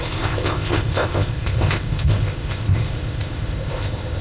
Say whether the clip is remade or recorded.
remade